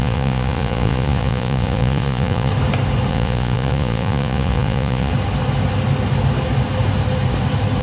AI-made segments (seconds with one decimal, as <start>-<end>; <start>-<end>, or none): 0.0-2.5; 3.1-5.1